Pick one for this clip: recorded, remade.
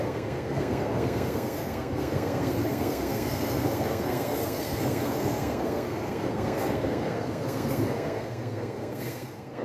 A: remade